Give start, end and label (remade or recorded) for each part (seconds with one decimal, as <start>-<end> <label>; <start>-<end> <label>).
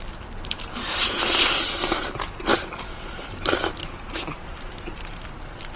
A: 0.0-5.8 remade